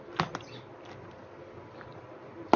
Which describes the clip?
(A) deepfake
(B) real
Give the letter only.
B